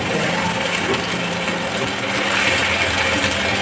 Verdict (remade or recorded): recorded